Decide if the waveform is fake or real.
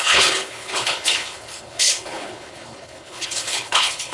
fake